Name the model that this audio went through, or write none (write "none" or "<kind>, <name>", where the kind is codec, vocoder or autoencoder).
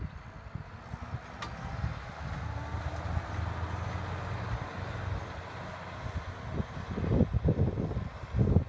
none